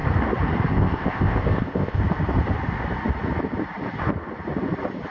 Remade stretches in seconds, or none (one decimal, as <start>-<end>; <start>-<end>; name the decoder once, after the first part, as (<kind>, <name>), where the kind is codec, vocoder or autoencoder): 0.7-2.0 (codec, ZipCodec)